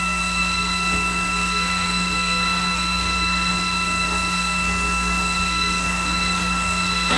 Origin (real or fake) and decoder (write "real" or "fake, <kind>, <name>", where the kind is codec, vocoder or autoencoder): fake, codec, SNAC